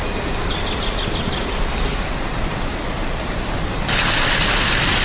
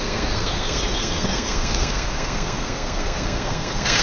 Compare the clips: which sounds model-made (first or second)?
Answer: second